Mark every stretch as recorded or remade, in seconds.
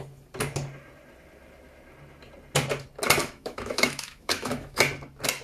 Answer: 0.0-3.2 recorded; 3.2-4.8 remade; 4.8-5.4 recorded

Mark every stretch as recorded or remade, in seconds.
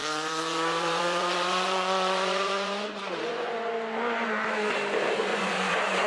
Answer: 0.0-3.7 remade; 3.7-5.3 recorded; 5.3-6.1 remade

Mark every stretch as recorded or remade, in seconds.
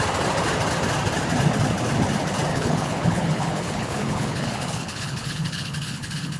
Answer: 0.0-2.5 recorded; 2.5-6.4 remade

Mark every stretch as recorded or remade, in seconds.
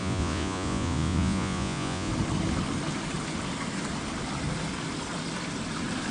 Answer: 0.0-2.1 remade; 2.1-6.1 recorded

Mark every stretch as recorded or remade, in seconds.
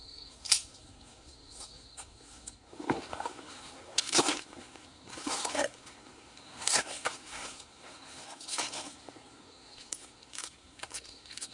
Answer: 0.0-11.5 remade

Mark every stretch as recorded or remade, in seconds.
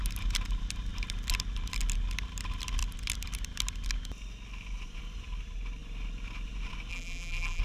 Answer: 0.0-6.9 recorded; 6.9-7.6 remade